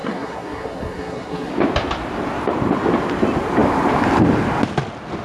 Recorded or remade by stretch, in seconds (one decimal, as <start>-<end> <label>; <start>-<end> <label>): 0.0-1.5 remade; 1.5-5.2 recorded